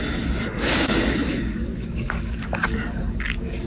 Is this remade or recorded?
remade